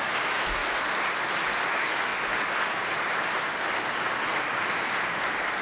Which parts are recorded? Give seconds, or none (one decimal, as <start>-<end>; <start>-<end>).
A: 0.6-1.7; 2.1-5.6